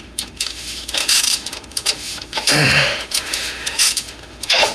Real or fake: fake